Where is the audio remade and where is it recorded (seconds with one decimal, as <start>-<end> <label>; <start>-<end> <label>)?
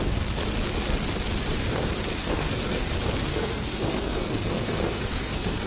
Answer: 0.0-2.2 recorded; 2.2-2.9 remade; 2.9-3.3 recorded; 3.3-5.7 remade